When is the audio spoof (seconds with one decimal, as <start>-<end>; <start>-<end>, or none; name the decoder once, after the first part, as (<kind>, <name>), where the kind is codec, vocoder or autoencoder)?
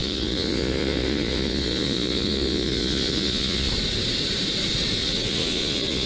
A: 0.0-3.7 (vocoder, Vocos); 5.0-6.1